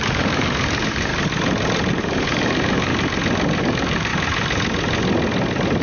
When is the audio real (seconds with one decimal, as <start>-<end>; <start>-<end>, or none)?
1.1-2.0; 2.9-3.6; 4.1-5.8